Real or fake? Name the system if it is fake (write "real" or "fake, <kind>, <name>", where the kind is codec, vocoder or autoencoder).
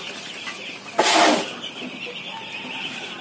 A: real